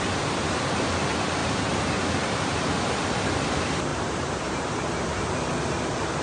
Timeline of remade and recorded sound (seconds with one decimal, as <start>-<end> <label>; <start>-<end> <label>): 0.0-1.4 recorded; 1.4-2.7 remade; 2.7-3.9 recorded; 3.9-4.9 remade; 4.9-6.2 recorded